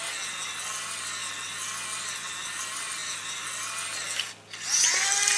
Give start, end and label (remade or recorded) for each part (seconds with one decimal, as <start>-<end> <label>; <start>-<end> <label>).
0.0-5.4 recorded